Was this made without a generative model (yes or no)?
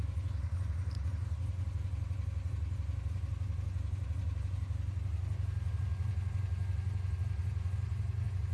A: yes